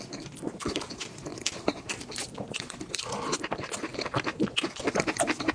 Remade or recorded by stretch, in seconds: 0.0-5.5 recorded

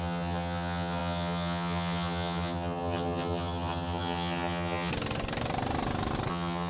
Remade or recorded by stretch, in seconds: 0.0-4.9 remade; 4.9-6.3 recorded; 6.3-6.7 remade

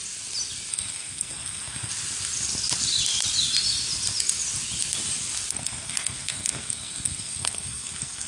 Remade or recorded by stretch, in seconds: 0.0-0.7 recorded; 0.7-1.9 remade; 1.9-5.5 recorded; 5.5-8.3 remade

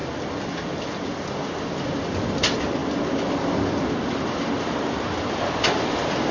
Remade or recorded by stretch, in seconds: 0.0-2.8 remade; 2.8-5.3 recorded; 5.3-6.3 remade

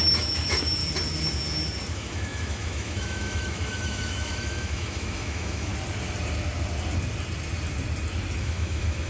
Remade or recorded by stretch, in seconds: 0.0-0.8 remade; 0.8-1.9 recorded; 1.9-5.7 remade; 5.7-8.4 recorded; 8.4-9.1 remade

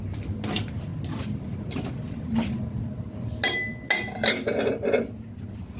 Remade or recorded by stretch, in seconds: 0.0-5.8 recorded

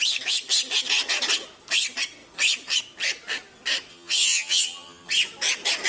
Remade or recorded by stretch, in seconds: 0.0-3.9 recorded; 3.9-5.1 remade; 5.1-5.9 recorded